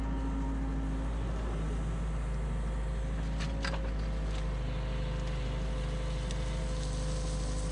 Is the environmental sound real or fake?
real